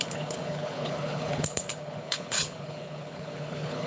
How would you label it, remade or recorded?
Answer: remade